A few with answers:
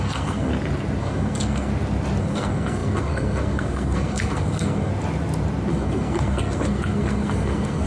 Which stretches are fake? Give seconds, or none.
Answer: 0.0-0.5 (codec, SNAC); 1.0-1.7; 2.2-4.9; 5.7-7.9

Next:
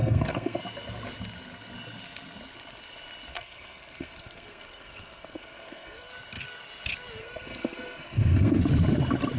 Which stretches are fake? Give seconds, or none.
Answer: 0.0-0.6 (codec, SNAC); 3.3-6.1; 7.2-8.6

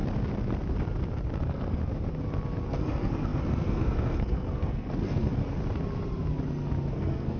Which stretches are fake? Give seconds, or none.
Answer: 1.4-1.8 (codec, SNAC); 2.7-5.4; 6.9-7.4

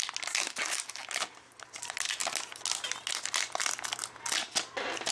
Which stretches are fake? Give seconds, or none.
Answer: none